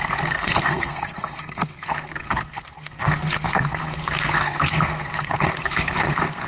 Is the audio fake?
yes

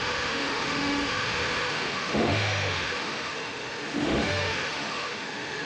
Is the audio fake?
yes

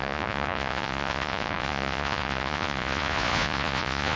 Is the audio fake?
yes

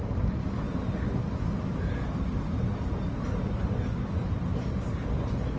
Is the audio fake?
no